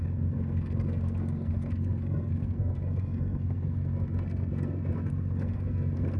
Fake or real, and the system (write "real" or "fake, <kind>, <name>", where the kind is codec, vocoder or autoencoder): fake, codec, SNAC